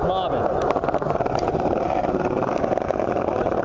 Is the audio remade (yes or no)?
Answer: no